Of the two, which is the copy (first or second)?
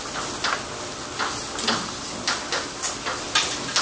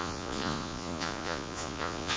second